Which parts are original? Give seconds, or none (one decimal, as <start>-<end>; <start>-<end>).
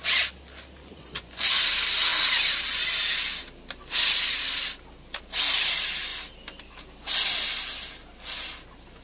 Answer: 0.0-0.8; 1.6-9.0